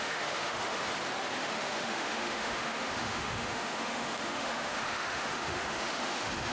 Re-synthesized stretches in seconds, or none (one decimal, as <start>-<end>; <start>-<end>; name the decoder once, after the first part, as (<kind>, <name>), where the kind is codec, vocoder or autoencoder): 0.0-0.8 (autoencoder, DAC-VAE); 1.4-6.5